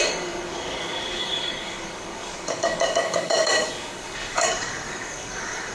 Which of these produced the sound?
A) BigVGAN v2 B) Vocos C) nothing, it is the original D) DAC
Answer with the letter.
D